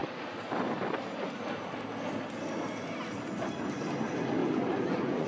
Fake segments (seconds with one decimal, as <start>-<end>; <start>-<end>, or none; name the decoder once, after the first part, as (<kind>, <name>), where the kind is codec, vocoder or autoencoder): 4.4-5.3 (vocoder, Vocos)